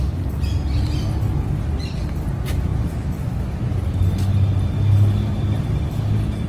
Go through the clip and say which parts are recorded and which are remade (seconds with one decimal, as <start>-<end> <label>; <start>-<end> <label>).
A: 0.0-6.5 recorded